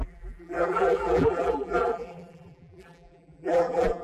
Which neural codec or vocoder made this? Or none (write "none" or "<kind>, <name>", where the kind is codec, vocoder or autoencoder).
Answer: vocoder, BigVGAN v2